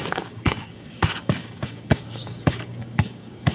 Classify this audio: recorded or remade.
remade